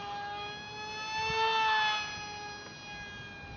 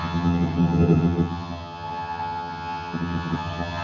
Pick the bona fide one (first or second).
first